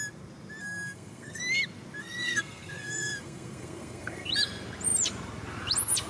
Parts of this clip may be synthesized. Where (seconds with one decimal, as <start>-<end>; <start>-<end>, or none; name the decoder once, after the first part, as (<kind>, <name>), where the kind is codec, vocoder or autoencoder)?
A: 0.6-1.4 (codec, SNAC); 2.0-4.3